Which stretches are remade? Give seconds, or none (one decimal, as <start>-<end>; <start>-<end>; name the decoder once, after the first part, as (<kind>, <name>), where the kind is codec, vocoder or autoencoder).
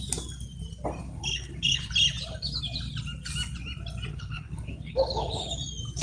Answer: 1.0-1.9 (codec, HILCodec); 4.1-5.6